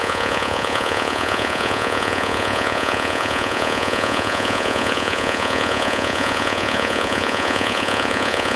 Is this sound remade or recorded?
remade